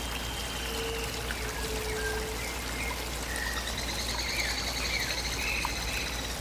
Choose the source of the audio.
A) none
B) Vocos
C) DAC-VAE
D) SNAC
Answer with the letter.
A